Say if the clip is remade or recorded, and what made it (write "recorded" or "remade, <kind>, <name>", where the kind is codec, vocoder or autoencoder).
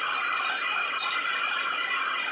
recorded